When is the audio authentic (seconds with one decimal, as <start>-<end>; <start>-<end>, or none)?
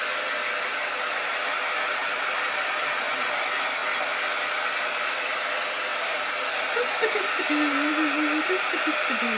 0.0-9.4